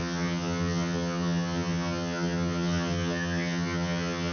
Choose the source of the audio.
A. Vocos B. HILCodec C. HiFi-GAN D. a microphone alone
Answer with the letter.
C